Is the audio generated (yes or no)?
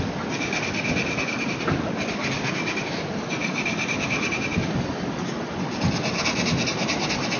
no